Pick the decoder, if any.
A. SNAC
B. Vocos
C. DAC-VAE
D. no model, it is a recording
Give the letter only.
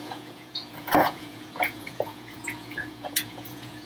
B